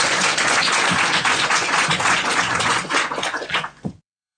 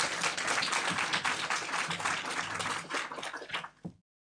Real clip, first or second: second